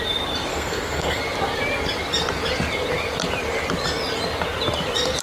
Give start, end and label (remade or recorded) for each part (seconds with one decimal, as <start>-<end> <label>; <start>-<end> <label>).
0.0-0.5 recorded; 0.5-1.2 remade; 1.2-5.2 recorded